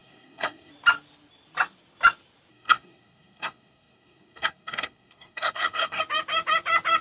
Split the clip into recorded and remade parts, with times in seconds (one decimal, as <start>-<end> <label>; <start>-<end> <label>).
0.0-0.7 remade; 0.7-2.5 recorded; 2.5-6.0 remade; 6.0-7.0 recorded